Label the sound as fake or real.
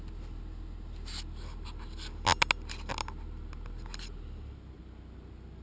real